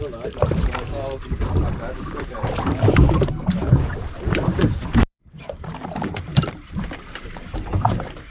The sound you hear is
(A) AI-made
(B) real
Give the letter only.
A